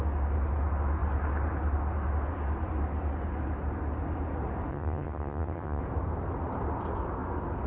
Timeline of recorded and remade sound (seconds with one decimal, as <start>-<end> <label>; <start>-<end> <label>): 0.0-4.7 recorded; 4.7-5.8 remade; 5.8-7.7 recorded